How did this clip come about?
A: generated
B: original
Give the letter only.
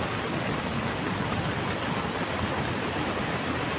B